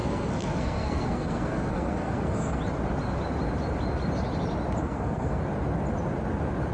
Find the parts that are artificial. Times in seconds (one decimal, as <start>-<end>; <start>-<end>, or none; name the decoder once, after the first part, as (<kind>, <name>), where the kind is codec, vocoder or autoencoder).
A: 0.0-2.6 (codec, SNAC); 4.8-5.4